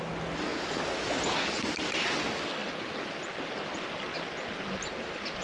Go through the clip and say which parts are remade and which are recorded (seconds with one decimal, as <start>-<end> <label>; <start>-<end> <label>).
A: 0.0-5.4 recorded